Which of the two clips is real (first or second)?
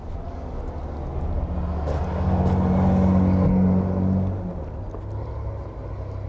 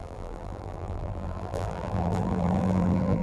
first